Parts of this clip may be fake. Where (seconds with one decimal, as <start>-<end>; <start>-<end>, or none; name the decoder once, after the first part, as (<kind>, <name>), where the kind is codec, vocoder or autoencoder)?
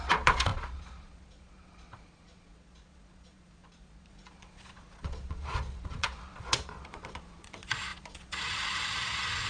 0.0-9.5 (vocoder, Vocos)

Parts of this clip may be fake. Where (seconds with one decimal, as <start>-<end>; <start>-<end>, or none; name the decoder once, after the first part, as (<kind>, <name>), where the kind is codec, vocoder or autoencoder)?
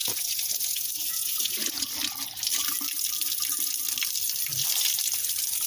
0.0-1.9 (vocoder, Vocos)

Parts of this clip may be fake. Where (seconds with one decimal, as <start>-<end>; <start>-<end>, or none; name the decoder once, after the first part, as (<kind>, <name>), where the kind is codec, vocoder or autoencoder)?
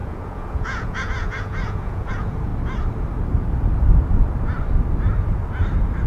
0.0-2.5 (vocoder, Vocos)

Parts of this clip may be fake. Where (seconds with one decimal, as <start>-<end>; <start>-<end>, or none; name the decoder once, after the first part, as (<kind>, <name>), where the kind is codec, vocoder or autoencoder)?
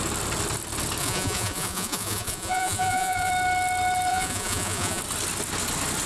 1.0-3.3 (vocoder, Vocos); 4.1-5.0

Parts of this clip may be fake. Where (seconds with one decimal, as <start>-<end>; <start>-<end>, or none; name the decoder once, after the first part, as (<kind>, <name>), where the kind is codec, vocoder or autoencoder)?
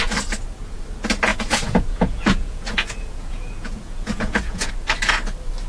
1.3-4.7 (vocoder, Vocos)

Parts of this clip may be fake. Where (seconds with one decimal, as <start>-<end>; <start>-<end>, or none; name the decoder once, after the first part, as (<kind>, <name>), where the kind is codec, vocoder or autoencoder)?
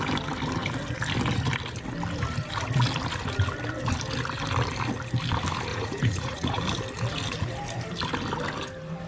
5.7-6.6 (vocoder, Vocos)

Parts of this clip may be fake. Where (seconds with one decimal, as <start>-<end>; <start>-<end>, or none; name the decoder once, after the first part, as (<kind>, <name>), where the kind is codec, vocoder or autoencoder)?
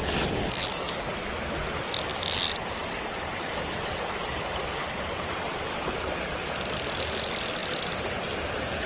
none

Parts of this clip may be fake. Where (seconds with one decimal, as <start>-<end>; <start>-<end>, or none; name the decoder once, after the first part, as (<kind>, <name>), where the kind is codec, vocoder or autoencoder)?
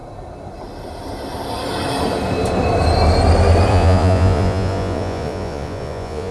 3.7-6.3 (vocoder, Vocos)